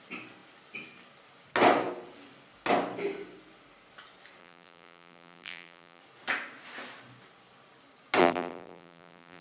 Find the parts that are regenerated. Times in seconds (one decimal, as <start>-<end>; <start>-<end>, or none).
4.4-6.0; 8.2-9.4